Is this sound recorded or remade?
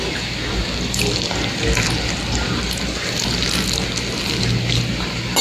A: recorded